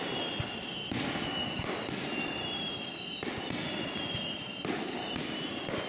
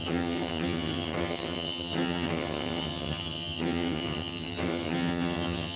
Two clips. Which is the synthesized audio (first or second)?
second